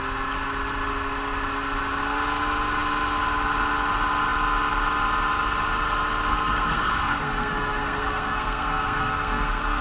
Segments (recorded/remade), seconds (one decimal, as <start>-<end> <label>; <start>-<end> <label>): 0.0-6.3 recorded; 6.3-9.8 remade